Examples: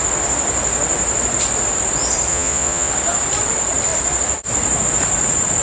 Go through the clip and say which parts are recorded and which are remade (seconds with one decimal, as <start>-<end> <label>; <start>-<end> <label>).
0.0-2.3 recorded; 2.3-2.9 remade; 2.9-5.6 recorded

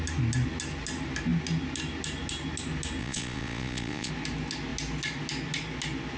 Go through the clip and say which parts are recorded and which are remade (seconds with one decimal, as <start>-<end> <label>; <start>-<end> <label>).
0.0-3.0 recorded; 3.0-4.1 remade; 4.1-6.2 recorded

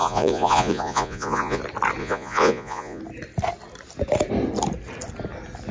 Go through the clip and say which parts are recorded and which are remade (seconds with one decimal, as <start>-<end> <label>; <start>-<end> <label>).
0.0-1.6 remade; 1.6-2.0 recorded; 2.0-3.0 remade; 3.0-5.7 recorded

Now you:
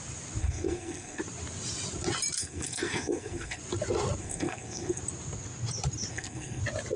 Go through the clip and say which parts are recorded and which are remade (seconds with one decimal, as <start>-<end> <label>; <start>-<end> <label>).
0.0-0.4 recorded; 0.4-1.2 remade; 1.2-2.4 recorded; 2.4-3.6 remade; 3.6-4.2 recorded; 4.2-5.0 remade; 5.0-6.1 recorded; 6.1-6.6 remade; 6.6-7.0 recorded

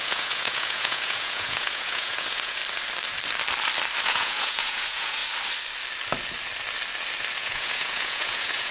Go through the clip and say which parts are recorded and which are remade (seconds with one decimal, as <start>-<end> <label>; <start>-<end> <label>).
0.0-2.6 remade; 2.6-4.0 recorded; 4.0-5.2 remade; 5.2-7.4 recorded; 7.4-8.7 remade

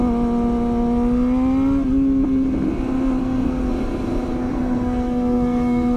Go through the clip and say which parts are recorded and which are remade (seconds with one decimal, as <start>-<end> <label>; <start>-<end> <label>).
0.0-3.2 recorded; 3.2-3.7 remade; 3.7-4.5 recorded; 4.5-6.0 remade

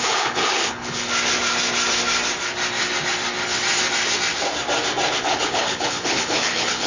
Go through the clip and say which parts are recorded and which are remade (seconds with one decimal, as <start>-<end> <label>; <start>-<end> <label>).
0.0-1.1 remade; 1.1-5.2 recorded; 5.2-6.9 remade